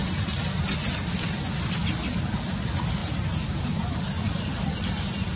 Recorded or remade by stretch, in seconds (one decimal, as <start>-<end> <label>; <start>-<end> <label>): 0.0-5.4 recorded